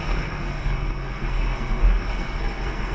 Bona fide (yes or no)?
no